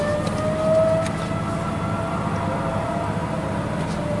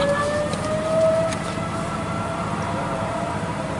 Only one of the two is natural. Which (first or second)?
first